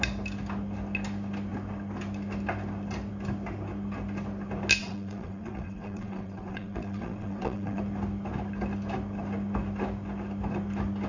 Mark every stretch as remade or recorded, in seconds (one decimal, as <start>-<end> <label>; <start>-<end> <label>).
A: 0.0-4.8 recorded; 4.8-7.8 remade; 7.8-11.1 recorded